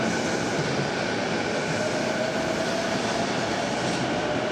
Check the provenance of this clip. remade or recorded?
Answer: recorded